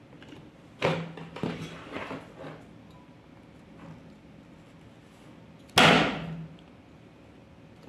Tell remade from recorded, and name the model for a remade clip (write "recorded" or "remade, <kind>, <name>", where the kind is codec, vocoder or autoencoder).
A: recorded